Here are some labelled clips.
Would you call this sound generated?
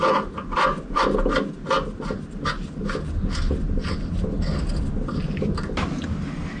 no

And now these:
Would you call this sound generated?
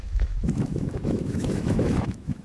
yes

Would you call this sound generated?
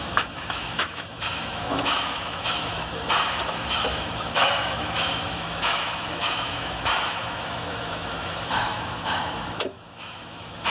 yes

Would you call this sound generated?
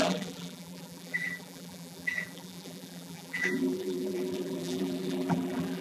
yes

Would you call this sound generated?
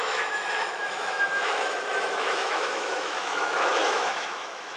yes